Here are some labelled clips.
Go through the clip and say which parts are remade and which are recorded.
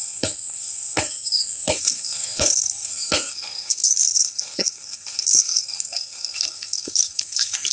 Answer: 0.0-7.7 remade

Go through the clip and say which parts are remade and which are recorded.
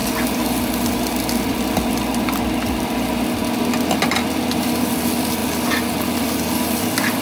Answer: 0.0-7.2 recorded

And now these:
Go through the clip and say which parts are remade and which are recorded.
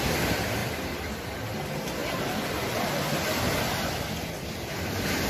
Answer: 0.0-2.0 recorded; 2.0-2.9 remade; 2.9-5.3 recorded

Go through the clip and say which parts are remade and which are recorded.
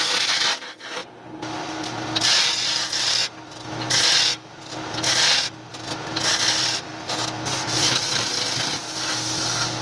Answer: 0.0-9.8 recorded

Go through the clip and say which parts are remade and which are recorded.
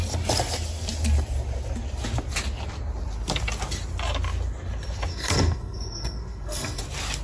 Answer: 0.0-5.1 recorded; 5.1-6.8 remade; 6.8-7.2 recorded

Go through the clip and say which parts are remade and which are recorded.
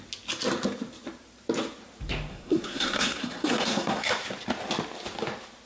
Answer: 0.0-2.3 recorded; 2.3-4.1 remade; 4.1-5.7 recorded